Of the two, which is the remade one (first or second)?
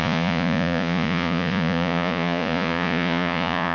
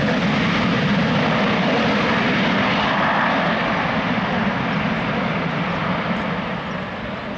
first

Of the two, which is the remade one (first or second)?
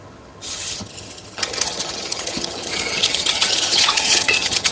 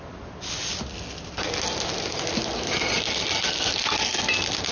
first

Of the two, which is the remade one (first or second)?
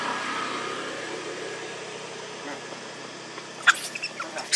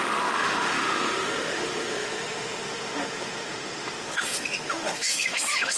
second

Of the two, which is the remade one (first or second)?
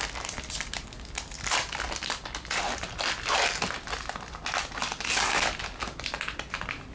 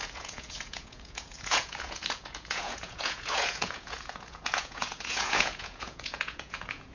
second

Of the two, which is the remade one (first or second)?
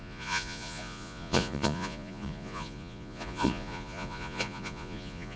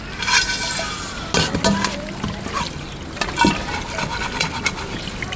first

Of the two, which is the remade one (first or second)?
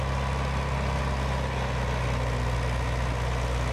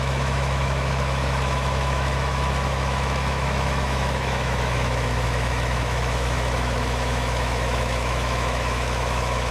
second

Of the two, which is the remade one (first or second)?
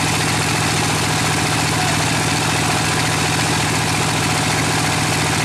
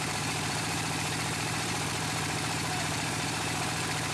second